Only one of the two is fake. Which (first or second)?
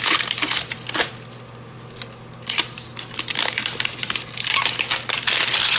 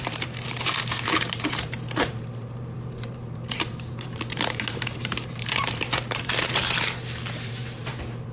second